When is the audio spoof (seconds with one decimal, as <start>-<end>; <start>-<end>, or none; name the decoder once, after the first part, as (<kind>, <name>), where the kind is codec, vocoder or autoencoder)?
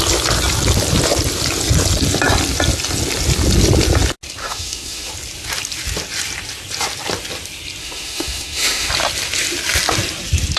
4.4-5.1 (autoencoder, DAC-VAE); 7.8-8.9